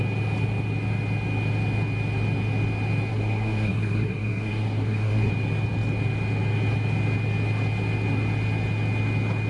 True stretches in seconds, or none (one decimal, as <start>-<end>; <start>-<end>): 0.0-3.1; 5.3-9.5